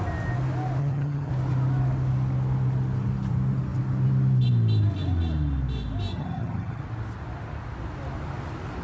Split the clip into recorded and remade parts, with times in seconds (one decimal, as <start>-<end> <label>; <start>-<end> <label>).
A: 0.0-0.8 recorded; 0.8-1.3 remade; 1.3-6.1 recorded; 6.1-6.8 remade; 6.8-8.8 recorded